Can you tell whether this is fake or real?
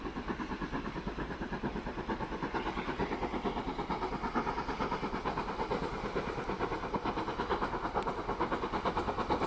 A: real